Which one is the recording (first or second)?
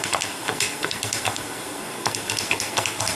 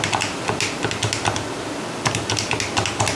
second